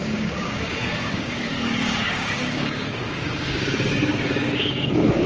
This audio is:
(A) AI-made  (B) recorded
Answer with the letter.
A